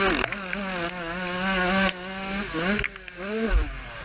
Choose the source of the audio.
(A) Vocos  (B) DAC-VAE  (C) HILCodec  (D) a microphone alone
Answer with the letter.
D